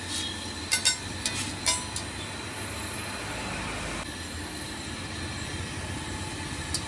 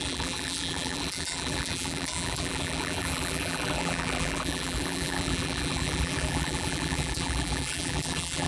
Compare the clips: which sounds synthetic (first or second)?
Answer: second